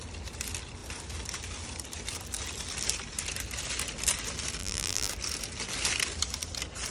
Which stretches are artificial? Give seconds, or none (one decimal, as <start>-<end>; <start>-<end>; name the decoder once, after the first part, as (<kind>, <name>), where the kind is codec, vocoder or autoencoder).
4.6-5.1 (vocoder, BigVGAN v2)